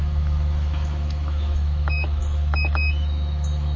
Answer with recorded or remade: remade